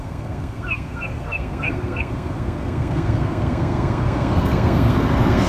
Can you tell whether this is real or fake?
fake